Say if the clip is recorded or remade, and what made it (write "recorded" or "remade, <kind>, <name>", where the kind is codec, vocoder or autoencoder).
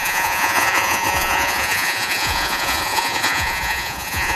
remade, vocoder, Vocos